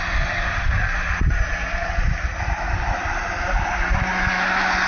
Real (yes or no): yes